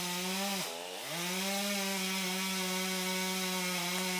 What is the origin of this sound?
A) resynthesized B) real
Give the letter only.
B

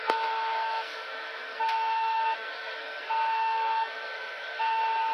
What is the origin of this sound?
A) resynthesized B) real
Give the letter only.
A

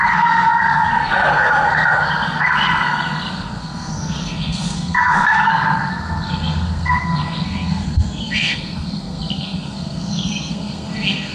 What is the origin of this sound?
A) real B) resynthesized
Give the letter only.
B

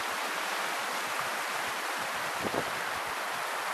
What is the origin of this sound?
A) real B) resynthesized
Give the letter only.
A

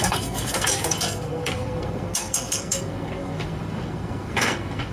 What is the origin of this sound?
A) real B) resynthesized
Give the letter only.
B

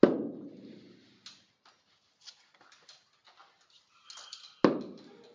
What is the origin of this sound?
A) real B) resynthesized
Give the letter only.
A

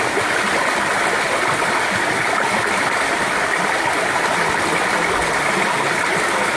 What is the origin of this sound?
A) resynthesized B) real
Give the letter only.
B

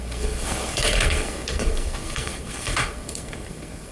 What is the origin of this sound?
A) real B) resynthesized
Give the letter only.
B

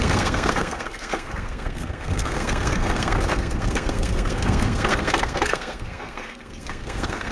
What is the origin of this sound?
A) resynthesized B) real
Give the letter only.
A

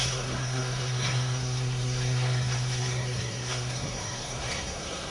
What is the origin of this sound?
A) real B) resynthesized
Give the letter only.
B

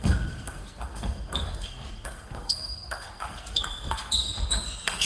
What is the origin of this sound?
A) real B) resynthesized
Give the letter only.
B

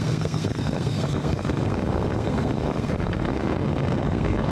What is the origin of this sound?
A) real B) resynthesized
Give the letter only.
B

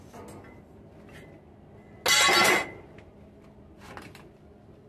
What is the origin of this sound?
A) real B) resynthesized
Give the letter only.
A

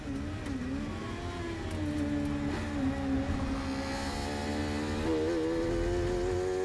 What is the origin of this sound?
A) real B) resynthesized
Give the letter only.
A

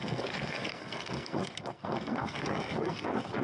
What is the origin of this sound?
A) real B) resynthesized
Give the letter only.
B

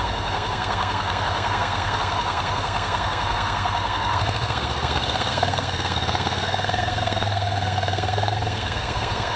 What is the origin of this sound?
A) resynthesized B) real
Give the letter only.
A